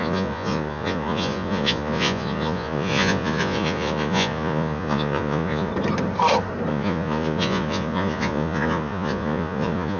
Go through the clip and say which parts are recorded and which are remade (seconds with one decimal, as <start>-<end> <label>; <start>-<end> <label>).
0.0-5.7 remade; 5.7-6.7 recorded; 6.7-10.0 remade